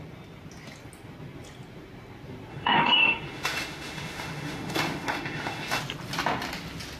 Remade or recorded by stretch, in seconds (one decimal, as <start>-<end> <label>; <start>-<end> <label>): 0.0-2.5 recorded; 2.5-5.8 remade; 5.8-7.0 recorded